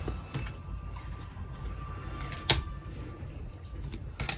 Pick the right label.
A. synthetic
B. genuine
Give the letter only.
B